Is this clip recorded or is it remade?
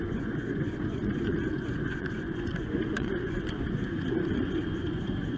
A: remade